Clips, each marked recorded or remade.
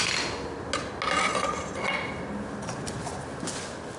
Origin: recorded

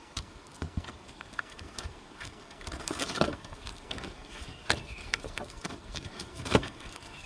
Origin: remade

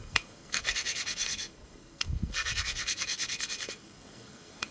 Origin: remade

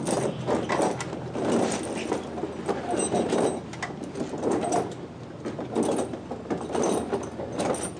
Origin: recorded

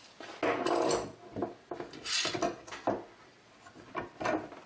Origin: recorded